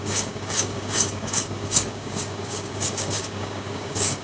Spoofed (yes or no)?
yes